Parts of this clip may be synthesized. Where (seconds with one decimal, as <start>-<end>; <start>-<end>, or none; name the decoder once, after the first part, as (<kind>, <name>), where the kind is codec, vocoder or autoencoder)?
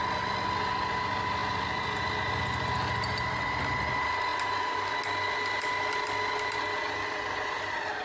none